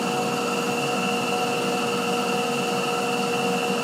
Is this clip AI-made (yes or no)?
no